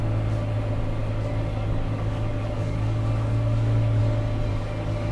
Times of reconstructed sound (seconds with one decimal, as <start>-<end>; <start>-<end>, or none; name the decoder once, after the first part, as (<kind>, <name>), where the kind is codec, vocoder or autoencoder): 1.0-4.0 (codec, DAC); 4.5-5.1